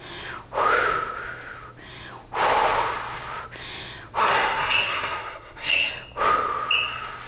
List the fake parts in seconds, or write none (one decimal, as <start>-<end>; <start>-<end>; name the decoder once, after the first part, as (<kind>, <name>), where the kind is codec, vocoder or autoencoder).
4.2-5.9 (codec, SNAC)